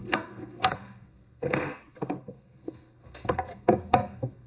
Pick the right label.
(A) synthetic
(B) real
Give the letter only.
A